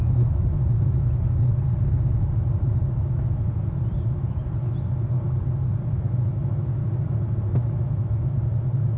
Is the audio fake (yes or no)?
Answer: no